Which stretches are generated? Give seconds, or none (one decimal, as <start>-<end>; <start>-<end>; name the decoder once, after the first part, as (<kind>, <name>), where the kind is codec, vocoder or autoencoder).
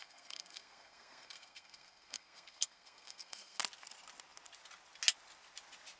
0.0-3.6 (codec, SNAC)